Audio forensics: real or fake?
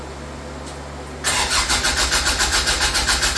real